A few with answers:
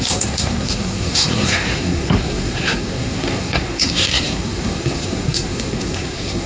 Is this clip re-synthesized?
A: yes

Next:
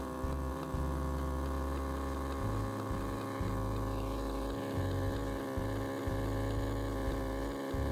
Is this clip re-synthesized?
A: no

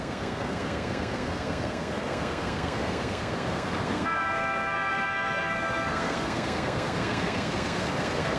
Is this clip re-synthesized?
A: yes